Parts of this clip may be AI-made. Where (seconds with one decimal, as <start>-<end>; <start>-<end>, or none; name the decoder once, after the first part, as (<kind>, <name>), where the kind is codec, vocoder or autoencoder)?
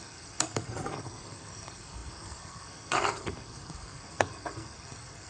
0.0-5.3 (codec, SNAC)